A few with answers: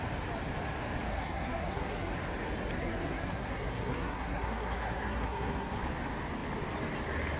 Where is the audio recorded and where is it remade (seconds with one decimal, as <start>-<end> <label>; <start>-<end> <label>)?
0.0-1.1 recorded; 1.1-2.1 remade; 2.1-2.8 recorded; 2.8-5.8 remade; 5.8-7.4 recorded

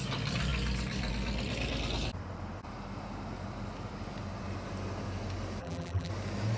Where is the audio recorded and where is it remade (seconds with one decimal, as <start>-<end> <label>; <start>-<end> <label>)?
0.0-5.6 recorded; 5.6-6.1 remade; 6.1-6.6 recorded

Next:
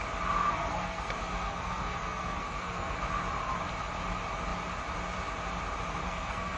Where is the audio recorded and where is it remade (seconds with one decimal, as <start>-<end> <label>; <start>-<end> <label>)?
0.0-0.5 recorded; 0.5-3.0 remade; 3.0-6.0 recorded; 6.0-6.6 remade